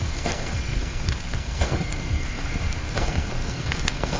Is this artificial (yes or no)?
yes